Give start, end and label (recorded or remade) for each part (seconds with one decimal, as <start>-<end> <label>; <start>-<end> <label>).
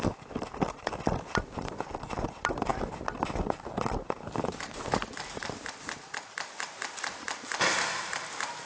0.0-8.7 recorded